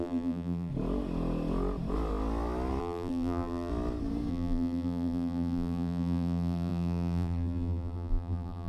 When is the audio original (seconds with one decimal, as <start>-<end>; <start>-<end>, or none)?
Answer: 0.7-2.8; 3.7-4.3